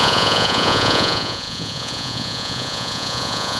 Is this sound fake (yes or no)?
yes